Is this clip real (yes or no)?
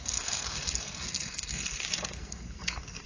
no